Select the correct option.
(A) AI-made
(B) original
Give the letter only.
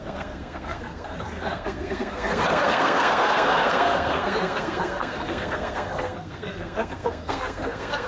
A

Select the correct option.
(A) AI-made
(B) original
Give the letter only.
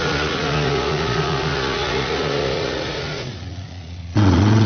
A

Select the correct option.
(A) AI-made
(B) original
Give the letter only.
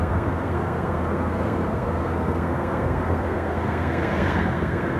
A